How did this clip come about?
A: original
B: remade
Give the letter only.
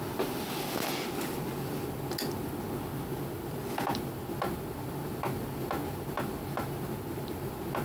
A